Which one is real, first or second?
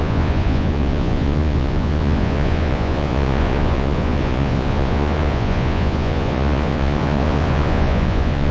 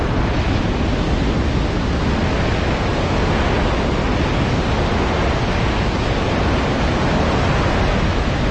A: second